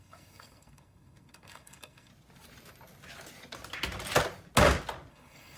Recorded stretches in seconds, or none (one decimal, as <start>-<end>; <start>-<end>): 2.1-5.1